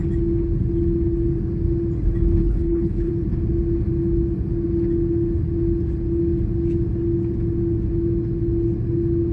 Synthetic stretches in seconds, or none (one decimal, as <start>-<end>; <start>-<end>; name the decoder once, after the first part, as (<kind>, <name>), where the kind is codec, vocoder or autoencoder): 2.4-3.1 (codec, HILCodec)